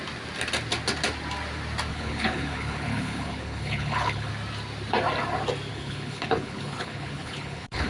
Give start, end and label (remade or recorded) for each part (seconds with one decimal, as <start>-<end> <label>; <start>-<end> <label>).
0.0-1.9 recorded; 1.9-4.3 remade; 4.3-5.7 recorded; 5.7-7.9 remade